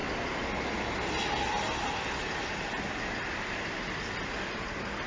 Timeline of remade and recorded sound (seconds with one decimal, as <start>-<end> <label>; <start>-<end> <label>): 0.0-5.1 recorded